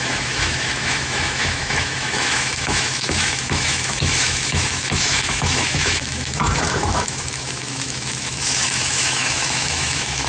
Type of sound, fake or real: fake